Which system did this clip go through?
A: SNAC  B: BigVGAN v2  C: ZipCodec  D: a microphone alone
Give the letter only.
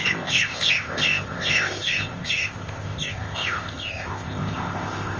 C